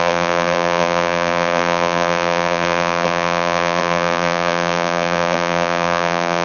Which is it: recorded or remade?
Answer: remade